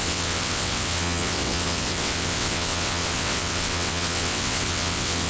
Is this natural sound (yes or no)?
no